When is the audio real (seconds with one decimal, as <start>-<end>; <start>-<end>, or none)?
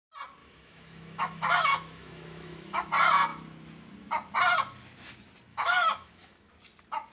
0.0-0.4; 2.9-5.5; 6.5-7.1